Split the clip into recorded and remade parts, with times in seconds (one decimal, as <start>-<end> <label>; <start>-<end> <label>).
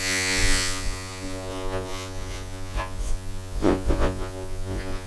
0.0-5.1 remade